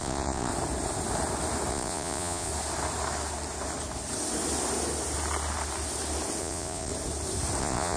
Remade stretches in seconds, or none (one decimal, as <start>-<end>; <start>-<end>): 0.0-0.5; 1.7-2.5; 6.4-6.9; 7.6-8.0